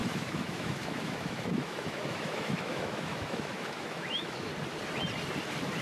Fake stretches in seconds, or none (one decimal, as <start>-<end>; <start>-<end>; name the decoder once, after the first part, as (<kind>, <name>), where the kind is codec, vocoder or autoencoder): 0.0-4.5 (autoencoder, DAC-VAE)